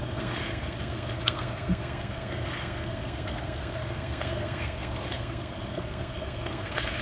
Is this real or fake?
fake